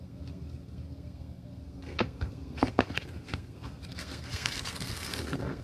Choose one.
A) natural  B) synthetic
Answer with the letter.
B